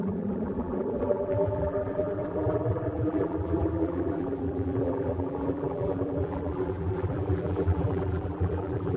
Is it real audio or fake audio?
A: fake